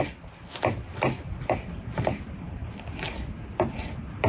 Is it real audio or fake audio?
real